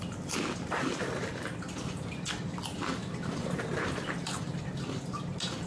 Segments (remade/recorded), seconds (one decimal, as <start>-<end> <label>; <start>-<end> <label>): 0.0-3.0 recorded; 3.0-4.2 remade; 4.2-5.7 recorded